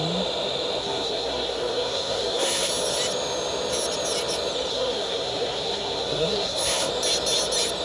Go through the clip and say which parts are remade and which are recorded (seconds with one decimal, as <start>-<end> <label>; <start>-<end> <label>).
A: 0.0-0.8 recorded; 0.8-2.7 remade; 2.7-4.7 recorded; 4.7-6.9 remade; 6.9-7.8 recorded